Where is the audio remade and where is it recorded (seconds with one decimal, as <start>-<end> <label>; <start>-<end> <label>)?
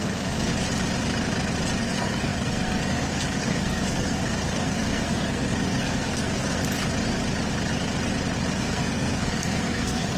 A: 0.0-0.5 remade; 0.5-1.8 recorded; 1.8-6.6 remade; 6.6-8.6 recorded; 8.6-10.2 remade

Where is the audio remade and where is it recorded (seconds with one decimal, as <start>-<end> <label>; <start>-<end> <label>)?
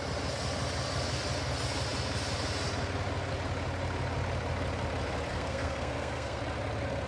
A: 0.0-5.3 recorded; 5.3-6.4 remade; 6.4-7.1 recorded